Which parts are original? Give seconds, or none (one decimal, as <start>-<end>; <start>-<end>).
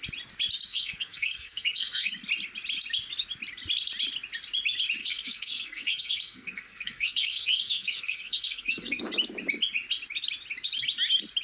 0.0-0.7; 2.1-5.0; 9.0-11.4